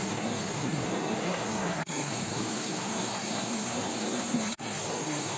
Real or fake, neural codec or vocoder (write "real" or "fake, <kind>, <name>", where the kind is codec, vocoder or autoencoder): fake, codec, SNAC